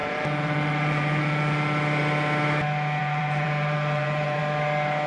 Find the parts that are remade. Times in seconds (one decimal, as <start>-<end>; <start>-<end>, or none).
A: 0.0-1.2; 3.0-4.4